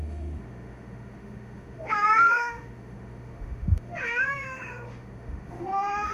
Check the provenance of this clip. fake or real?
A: fake